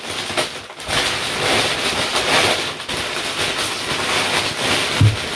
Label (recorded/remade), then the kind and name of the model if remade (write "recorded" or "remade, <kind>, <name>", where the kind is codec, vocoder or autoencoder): recorded